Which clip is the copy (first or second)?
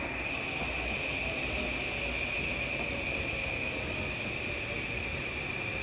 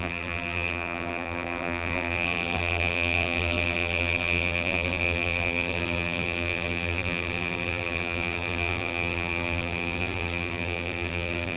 second